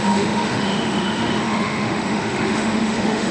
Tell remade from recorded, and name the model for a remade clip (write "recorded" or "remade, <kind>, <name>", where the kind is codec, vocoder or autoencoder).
remade, autoencoder, DAC-VAE